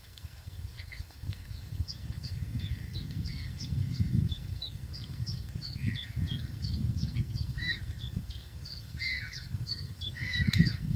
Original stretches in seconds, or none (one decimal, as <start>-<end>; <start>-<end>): none